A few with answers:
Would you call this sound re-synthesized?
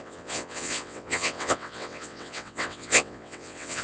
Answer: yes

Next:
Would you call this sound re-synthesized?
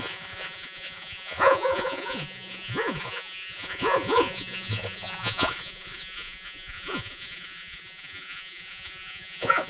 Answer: yes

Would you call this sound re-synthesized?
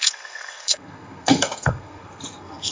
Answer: yes